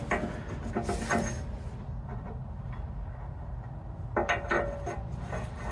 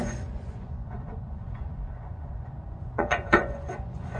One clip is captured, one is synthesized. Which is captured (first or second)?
first